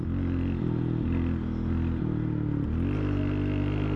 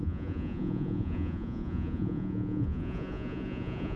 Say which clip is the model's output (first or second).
second